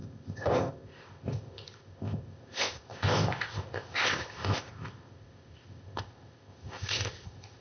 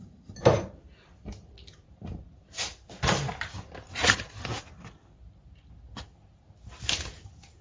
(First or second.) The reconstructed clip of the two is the first